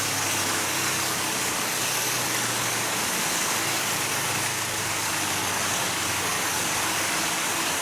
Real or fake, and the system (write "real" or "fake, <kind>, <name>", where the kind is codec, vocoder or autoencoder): fake, codec, DAC